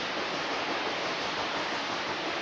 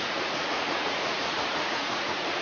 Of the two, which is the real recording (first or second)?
first